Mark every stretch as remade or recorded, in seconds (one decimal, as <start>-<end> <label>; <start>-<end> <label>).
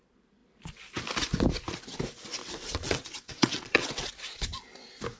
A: 0.0-2.4 recorded; 2.4-4.1 remade; 4.1-5.2 recorded